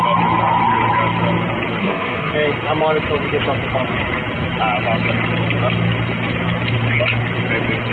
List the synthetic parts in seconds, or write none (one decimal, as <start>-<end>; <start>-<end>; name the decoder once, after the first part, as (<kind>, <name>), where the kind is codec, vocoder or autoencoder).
1.8-2.3 (codec, SNAC)